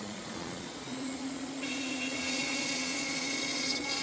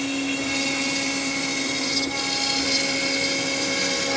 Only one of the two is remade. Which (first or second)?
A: first